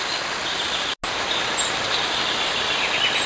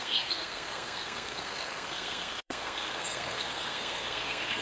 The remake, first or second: second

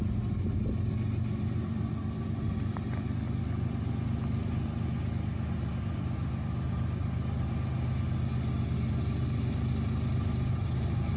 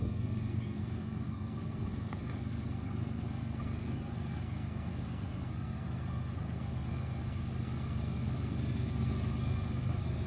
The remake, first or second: second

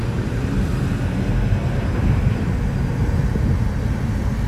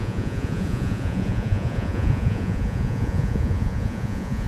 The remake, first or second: second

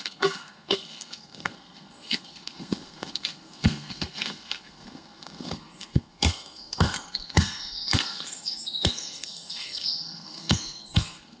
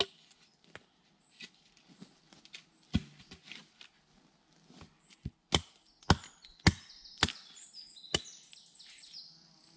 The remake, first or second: first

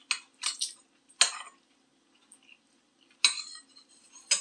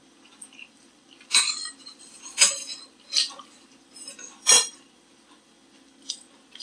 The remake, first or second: second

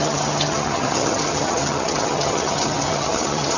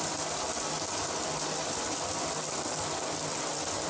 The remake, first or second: first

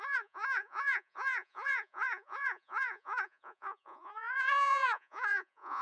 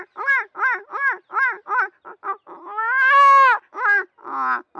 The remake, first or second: first